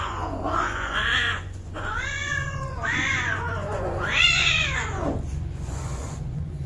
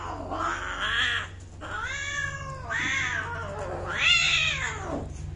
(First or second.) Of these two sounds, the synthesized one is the first